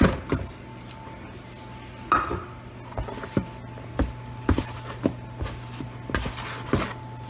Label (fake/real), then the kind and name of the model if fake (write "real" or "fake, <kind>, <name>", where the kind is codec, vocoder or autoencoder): real